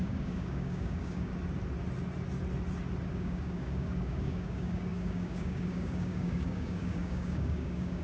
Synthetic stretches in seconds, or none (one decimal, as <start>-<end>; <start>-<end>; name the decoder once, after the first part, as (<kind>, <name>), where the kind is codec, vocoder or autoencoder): 0.0-1.3 (codec, DAC); 3.1-8.0